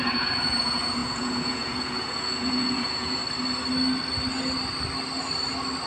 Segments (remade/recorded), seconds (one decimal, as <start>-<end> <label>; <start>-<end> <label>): 0.0-3.2 remade; 3.2-5.9 recorded